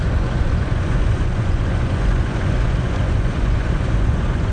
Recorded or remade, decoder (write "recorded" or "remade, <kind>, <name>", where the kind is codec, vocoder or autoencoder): remade, vocoder, Vocos